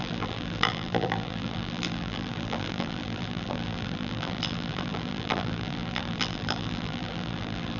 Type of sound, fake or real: fake